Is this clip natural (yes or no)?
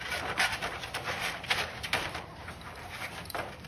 no